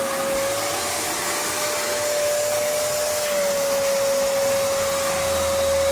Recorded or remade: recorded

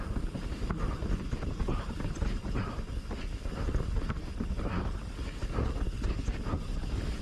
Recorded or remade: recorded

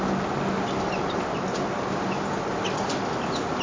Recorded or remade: recorded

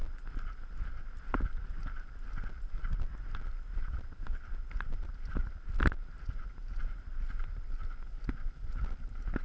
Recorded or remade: remade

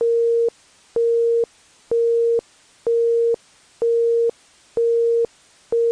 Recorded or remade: recorded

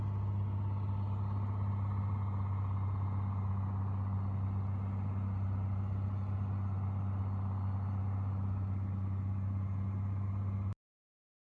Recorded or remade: recorded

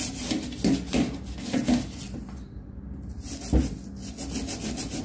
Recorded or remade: recorded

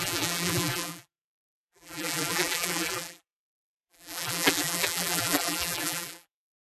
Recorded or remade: remade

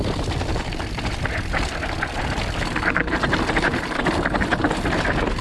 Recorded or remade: remade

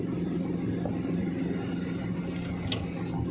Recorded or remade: recorded